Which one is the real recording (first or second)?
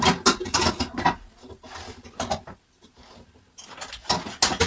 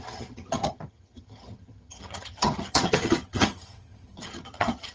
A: first